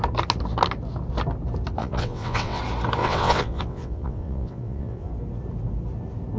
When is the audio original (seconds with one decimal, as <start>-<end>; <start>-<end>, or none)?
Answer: 0.0-1.8; 2.6-3.0; 5.1-6.4